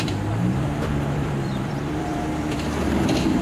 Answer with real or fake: fake